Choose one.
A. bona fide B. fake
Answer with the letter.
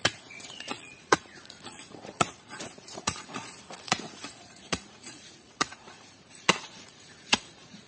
B